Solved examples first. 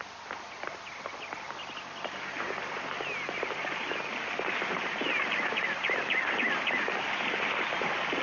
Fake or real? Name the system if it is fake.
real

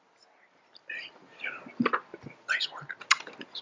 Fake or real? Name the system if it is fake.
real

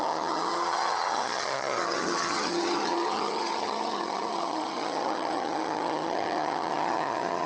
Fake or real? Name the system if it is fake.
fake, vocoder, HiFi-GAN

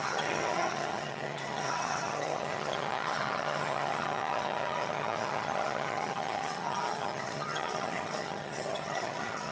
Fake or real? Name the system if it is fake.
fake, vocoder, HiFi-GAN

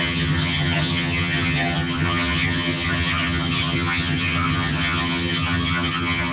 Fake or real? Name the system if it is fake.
fake, vocoder, HiFi-GAN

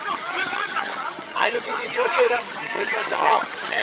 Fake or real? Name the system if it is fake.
fake, vocoder, HiFi-GAN